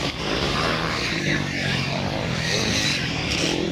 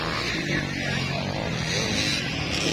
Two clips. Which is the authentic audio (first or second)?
second